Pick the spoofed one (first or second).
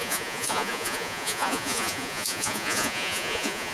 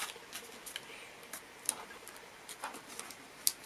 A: first